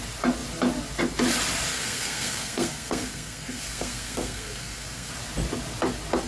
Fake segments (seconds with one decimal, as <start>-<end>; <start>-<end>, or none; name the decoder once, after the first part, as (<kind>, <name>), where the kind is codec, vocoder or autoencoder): 1.7-5.1 (codec, SNAC)